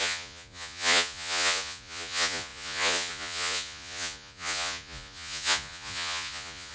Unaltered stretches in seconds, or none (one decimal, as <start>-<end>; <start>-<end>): none